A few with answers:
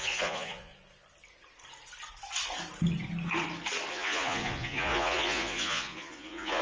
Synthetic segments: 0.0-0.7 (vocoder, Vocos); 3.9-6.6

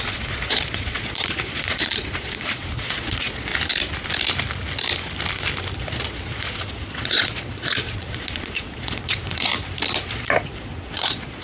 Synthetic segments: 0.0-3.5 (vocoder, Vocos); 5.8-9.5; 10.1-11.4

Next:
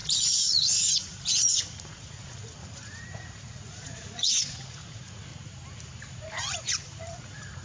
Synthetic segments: 0.0-5.3 (vocoder, Vocos); 6.1-7.6

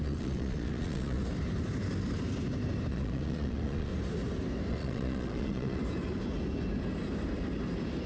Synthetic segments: 0.0-1.2 (vocoder, Vocos); 2.9-3.9; 4.7-5.8